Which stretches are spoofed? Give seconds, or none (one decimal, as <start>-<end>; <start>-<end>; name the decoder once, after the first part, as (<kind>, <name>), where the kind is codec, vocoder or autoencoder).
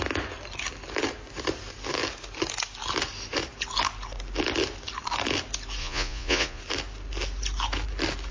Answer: 5.8-6.6 (vocoder, Vocos)